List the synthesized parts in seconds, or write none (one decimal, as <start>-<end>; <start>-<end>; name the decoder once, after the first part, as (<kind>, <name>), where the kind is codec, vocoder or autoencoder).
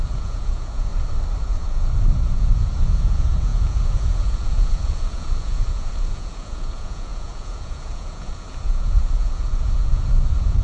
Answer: 0.0-0.9 (vocoder, Vocos); 1.4-10.6